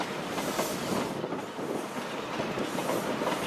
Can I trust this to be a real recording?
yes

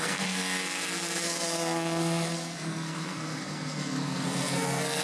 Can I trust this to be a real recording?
no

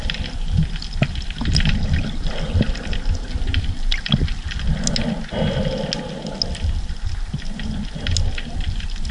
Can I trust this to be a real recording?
yes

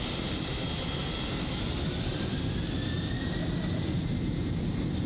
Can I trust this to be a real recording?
yes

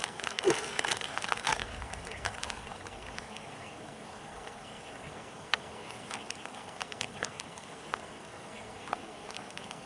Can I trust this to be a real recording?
no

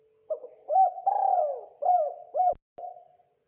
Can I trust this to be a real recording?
yes